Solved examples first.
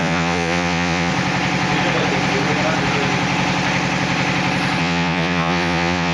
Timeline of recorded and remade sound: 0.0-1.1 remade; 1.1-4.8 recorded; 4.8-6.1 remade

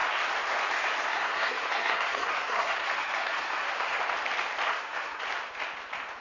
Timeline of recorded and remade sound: 0.0-1.1 recorded; 1.1-4.0 remade; 4.0-4.7 recorded; 4.7-5.2 remade; 5.2-6.2 recorded